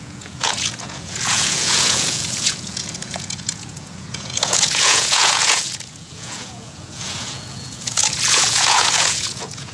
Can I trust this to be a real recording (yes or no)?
no